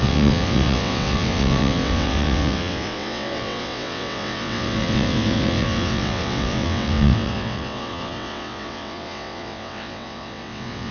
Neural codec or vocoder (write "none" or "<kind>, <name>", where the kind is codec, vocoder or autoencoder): vocoder, WaveNeXt